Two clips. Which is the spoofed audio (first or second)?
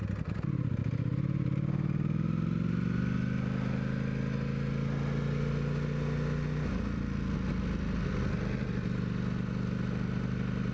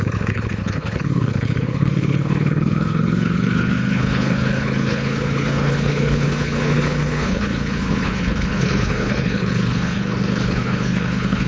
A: second